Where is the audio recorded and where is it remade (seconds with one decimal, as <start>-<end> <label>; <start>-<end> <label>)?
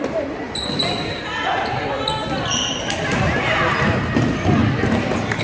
0.0-5.4 recorded